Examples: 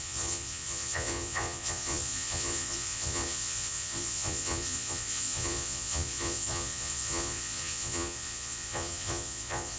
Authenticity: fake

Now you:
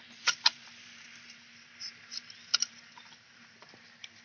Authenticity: real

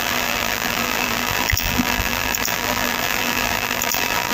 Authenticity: fake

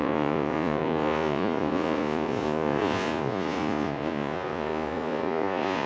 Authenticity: fake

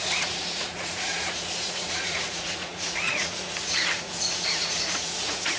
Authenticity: fake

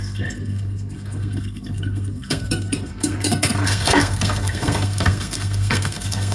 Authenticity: fake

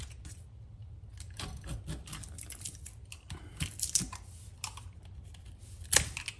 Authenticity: real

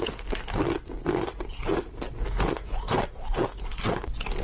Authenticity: real